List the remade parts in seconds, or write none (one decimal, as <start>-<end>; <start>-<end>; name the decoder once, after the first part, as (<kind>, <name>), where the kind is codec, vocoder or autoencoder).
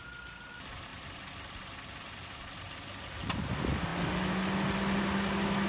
none